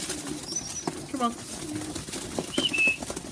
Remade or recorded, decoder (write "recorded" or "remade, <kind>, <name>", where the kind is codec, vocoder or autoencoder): recorded